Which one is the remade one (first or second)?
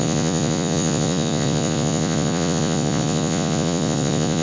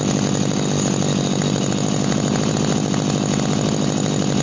first